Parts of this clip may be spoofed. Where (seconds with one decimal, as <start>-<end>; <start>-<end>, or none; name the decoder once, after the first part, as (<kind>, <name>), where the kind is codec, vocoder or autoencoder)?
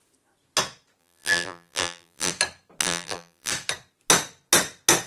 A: 1.0-2.3 (vocoder, BigVGAN v2); 2.8-3.5